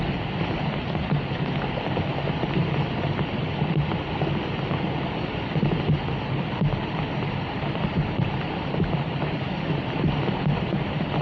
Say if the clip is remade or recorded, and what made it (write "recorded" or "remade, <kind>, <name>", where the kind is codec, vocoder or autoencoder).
recorded